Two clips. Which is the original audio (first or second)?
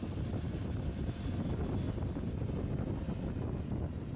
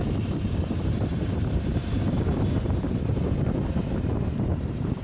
first